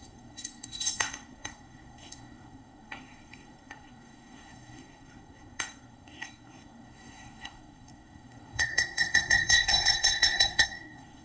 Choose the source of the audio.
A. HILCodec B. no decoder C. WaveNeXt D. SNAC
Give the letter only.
D